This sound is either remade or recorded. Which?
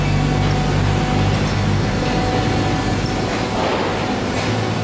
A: recorded